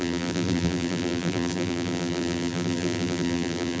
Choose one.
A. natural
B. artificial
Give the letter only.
B